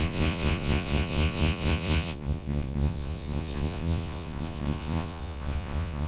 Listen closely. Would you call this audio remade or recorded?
remade